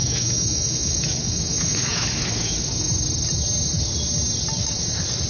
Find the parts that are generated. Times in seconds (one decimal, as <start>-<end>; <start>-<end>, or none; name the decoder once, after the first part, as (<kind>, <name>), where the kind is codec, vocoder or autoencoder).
0.0-2.9 (autoencoder, DAC-VAE)